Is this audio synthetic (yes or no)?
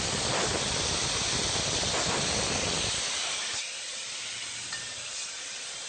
no